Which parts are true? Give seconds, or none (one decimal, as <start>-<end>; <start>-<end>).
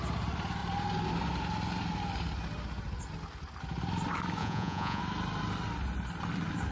0.0-4.4; 5.0-6.7